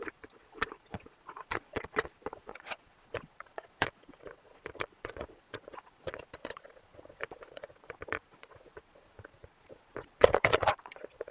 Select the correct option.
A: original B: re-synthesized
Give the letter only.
B